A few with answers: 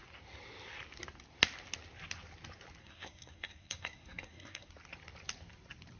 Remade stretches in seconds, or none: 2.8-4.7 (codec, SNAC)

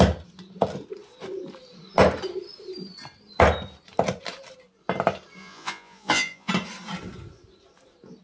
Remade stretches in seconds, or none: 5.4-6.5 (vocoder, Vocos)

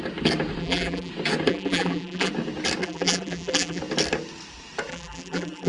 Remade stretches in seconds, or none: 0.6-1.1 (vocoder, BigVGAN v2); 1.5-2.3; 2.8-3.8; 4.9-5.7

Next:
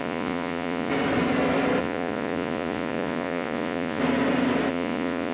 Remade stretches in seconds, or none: 0.0-0.9 (vocoder, Vocos); 1.8-4.0; 4.7-5.3